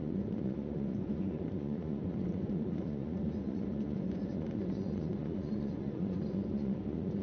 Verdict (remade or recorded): remade